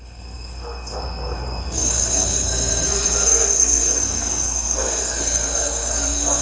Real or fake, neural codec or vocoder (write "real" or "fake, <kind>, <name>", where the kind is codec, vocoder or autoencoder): fake, codec, SNAC